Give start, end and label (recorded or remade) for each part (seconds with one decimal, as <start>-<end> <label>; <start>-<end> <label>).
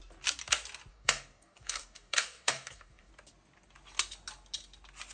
0.0-0.9 recorded; 0.9-3.1 remade; 3.1-5.1 recorded